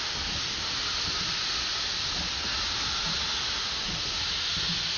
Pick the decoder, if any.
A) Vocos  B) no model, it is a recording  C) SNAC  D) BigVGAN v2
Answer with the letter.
B